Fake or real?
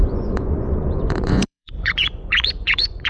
fake